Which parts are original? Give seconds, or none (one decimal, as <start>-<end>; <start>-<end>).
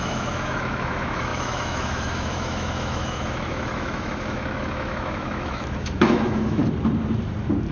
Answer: 6.6-7.7